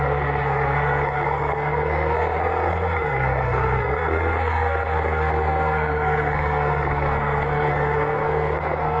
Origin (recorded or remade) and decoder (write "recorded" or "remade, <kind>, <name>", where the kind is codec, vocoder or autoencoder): remade, codec, SNAC